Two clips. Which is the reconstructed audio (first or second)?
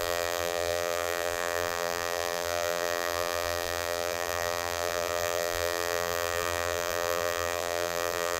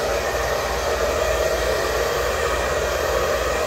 first